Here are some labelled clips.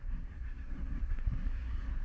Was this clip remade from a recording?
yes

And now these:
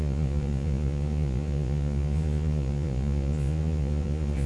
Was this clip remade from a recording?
yes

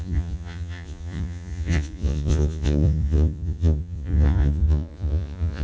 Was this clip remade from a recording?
yes